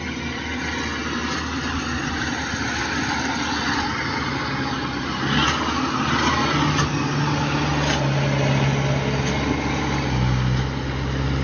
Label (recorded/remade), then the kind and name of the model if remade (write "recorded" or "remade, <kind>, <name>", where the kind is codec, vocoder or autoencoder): recorded